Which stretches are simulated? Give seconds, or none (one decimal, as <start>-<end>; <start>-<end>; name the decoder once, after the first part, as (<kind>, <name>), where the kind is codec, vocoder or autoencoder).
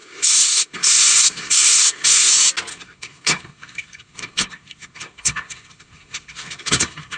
0.0-2.3 (codec, SNAC); 2.7-7.2